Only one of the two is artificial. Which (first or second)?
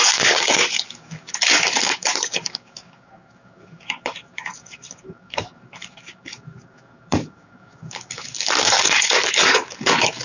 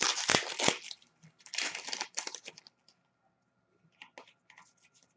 first